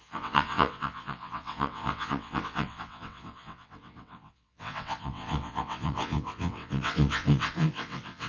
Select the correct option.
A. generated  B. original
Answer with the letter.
A